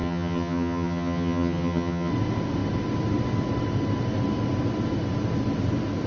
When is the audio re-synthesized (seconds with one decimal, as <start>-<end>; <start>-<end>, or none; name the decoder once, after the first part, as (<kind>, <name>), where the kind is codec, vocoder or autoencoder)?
0.0-2.1 (vocoder, HiFi-GAN)